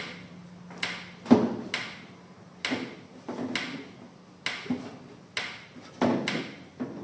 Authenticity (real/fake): real